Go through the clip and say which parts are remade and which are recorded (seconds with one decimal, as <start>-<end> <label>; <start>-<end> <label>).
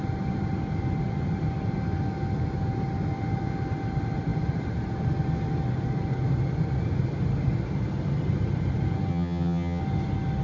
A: 0.0-9.1 recorded; 9.1-9.8 remade; 9.8-10.4 recorded